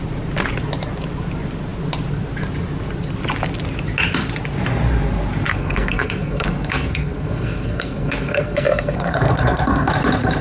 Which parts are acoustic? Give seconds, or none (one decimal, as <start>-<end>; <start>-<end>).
0.0-5.5; 9.9-10.4